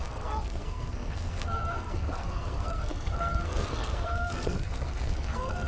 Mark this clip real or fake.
fake